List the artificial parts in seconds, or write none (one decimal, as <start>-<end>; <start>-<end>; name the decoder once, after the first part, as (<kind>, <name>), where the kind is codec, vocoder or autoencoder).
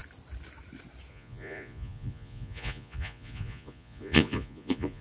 1.1-5.0 (vocoder, Vocos)